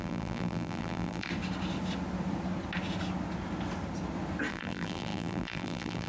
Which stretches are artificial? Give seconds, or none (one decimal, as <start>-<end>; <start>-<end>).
0.0-1.3; 4.5-6.1